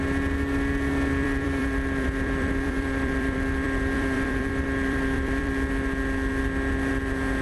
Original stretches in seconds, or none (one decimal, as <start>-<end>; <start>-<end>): 0.0-1.1; 5.5-7.4